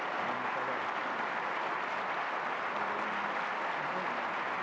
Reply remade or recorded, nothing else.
recorded